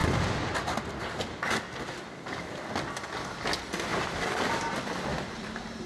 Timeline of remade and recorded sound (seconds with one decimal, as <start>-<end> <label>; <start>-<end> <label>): 0.0-3.9 recorded; 3.9-4.4 remade; 4.4-5.1 recorded; 5.1-5.9 remade